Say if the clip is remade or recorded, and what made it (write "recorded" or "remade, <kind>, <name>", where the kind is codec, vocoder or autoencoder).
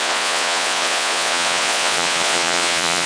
remade, vocoder, Vocos